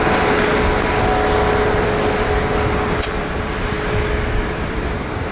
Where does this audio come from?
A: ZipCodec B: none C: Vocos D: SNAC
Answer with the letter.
B